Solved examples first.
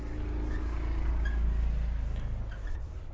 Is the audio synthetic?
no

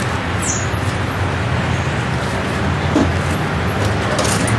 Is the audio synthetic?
no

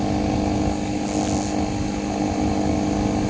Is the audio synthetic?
no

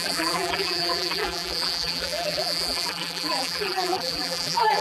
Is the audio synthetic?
yes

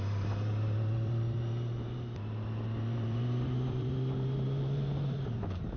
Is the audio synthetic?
yes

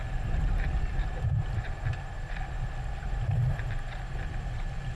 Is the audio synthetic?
no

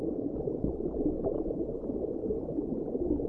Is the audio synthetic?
no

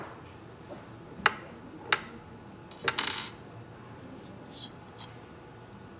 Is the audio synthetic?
no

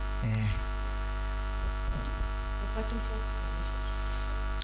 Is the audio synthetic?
no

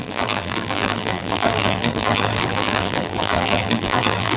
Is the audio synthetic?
yes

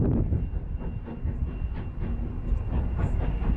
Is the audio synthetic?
no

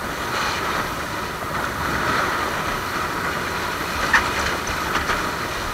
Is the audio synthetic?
no